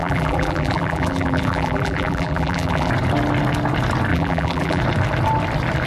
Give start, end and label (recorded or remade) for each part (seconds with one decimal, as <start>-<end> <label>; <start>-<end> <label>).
0.0-2.9 remade; 2.9-4.1 recorded; 4.1-4.8 remade; 4.8-5.9 recorded